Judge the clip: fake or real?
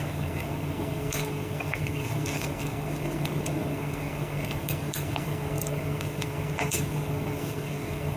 fake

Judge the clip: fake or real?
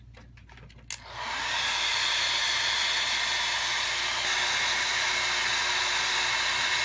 real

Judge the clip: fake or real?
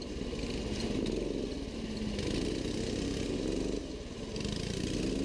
real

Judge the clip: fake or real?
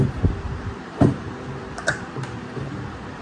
fake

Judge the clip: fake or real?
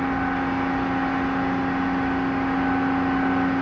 real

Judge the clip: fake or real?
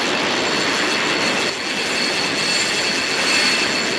real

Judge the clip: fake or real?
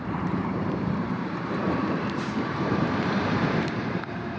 fake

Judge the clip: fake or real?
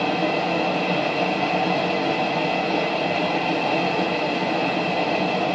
real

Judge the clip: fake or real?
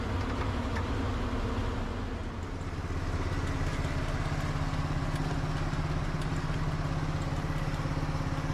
real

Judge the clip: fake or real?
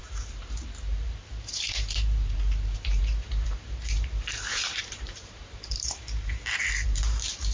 fake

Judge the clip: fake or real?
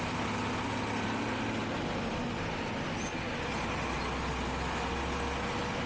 real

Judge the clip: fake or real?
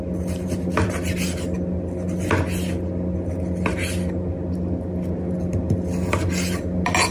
real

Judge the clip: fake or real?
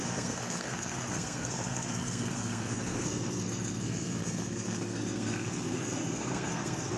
fake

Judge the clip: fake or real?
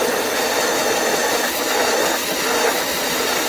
real